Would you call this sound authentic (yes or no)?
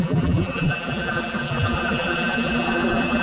no